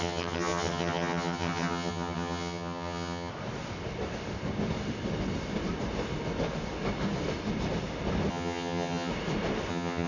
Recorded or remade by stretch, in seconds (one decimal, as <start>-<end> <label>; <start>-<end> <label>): 0.0-3.3 remade; 3.3-8.3 recorded; 8.3-9.1 remade; 9.1-9.7 recorded; 9.7-10.1 remade